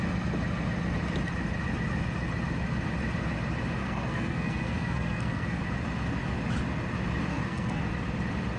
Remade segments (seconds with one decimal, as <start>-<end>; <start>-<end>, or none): 3.8-5.6; 7.3-7.8